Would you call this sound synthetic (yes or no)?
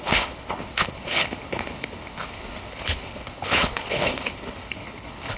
yes